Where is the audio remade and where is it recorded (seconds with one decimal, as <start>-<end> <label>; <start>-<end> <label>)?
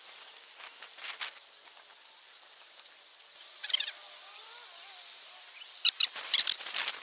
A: 0.0-7.0 recorded